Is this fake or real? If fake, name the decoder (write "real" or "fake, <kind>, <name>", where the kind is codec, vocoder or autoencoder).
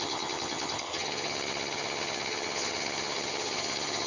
fake, vocoder, HiFi-GAN